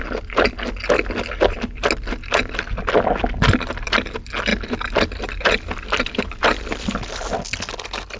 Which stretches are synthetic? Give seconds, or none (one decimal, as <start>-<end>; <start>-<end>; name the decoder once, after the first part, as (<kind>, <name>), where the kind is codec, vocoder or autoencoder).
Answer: none